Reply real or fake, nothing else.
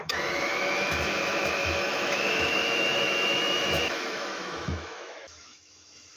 fake